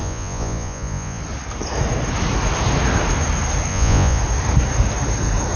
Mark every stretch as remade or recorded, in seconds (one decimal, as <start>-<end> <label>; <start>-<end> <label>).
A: 0.0-1.2 remade; 1.2-3.7 recorded; 3.7-4.2 remade; 4.2-5.6 recorded

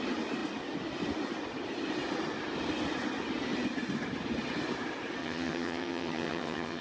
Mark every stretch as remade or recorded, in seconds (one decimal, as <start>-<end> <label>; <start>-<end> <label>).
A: 0.0-5.2 recorded; 5.2-6.8 remade

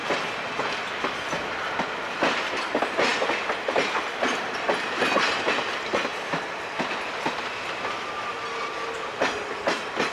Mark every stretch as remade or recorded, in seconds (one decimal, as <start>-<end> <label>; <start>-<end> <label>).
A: 0.0-10.1 recorded

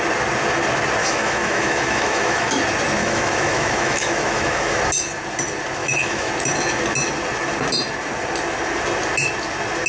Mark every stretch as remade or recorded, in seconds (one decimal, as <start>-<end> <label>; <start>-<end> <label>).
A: 0.0-1.0 recorded; 1.0-2.5 remade; 2.5-3.0 recorded; 3.0-4.8 remade; 4.8-5.8 recorded; 5.8-6.3 remade; 6.3-9.9 recorded